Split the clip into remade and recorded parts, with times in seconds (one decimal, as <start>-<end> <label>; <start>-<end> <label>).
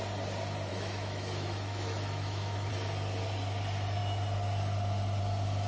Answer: 0.0-0.7 recorded; 0.7-2.7 remade; 2.7-5.7 recorded